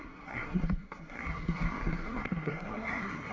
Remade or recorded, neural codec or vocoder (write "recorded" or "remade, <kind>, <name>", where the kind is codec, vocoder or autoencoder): remade, codec, SNAC